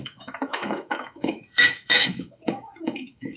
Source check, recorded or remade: remade